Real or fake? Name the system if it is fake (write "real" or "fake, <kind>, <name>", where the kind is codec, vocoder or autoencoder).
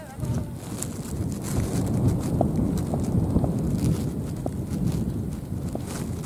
real